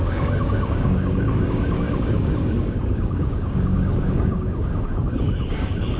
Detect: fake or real fake